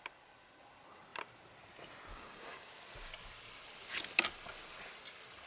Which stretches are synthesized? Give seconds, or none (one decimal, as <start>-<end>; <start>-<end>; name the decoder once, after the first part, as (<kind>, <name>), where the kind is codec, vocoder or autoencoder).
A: 2.1-2.7 (codec, DAC)